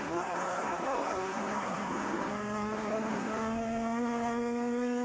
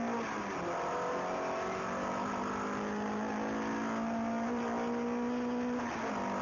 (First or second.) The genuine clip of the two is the second